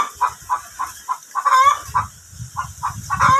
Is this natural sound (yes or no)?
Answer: yes